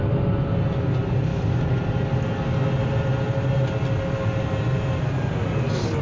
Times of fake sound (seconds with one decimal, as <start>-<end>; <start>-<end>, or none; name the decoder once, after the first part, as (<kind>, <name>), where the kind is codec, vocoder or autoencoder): 1.3-1.8 (autoencoder, DAC-VAE)